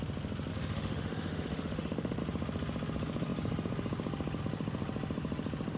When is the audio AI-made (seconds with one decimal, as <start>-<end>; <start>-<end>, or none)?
0.5-2.2